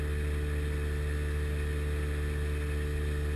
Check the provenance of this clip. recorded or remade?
recorded